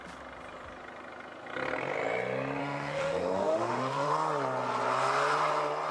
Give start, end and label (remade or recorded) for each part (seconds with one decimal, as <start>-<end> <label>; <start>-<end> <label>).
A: 0.0-2.6 recorded; 2.6-4.1 remade; 4.1-5.9 recorded